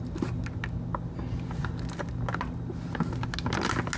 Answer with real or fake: real